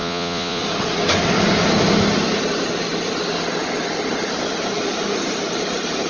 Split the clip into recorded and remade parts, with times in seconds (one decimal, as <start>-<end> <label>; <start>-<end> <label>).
0.0-0.6 remade; 0.6-6.1 recorded